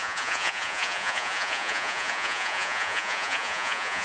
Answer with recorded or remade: remade